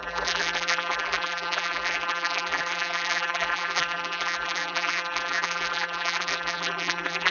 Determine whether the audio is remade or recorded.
remade